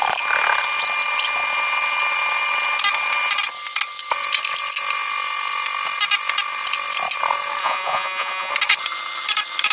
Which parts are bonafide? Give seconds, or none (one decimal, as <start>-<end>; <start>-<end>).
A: 0.0-7.6; 8.5-9.7